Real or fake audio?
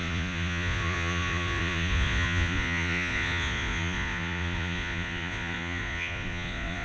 fake